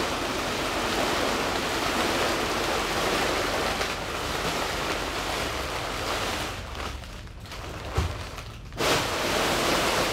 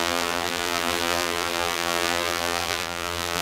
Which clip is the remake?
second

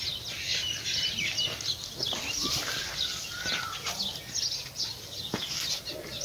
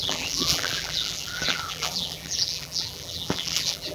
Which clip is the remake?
second